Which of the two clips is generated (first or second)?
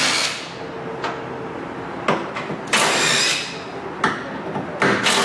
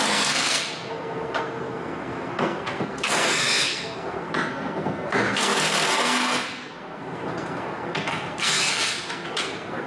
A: second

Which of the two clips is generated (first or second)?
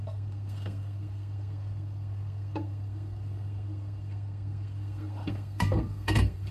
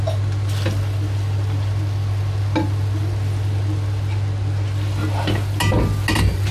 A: first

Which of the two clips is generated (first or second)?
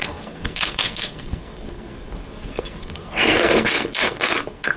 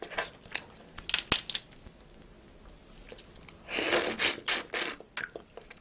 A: first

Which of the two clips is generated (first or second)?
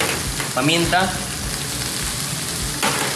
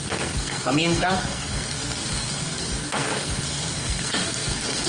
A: second